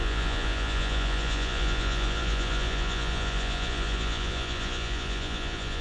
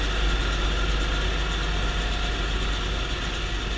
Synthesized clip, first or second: first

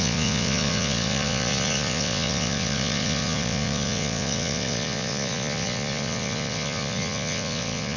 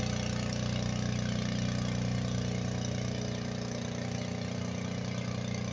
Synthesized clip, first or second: first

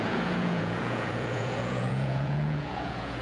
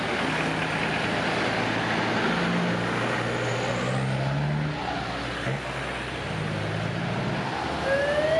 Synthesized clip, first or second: first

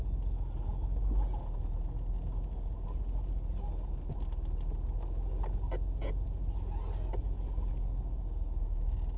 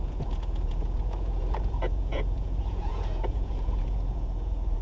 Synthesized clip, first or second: second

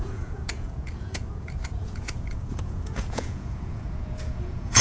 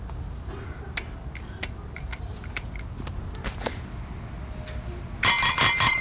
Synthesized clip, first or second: first